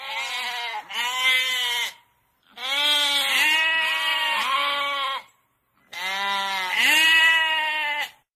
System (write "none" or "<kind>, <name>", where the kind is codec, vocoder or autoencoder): none